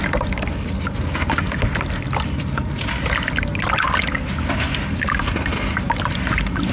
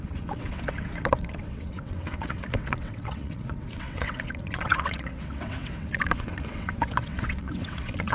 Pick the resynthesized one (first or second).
second